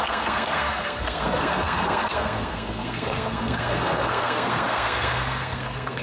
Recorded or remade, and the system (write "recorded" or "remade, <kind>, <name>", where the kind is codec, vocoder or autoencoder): remade, codec, SNAC